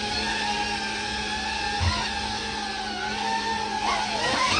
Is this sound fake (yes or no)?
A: no